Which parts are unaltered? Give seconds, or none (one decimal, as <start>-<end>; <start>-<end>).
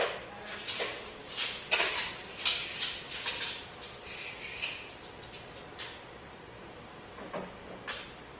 0.0-8.4